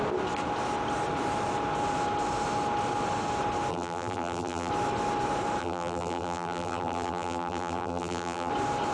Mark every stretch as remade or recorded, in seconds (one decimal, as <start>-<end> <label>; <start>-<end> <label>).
0.0-3.7 recorded; 3.7-4.7 remade; 4.7-5.6 recorded; 5.6-8.5 remade; 8.5-8.9 recorded